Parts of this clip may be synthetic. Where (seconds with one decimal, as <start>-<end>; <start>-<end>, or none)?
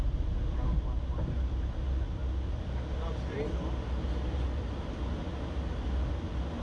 none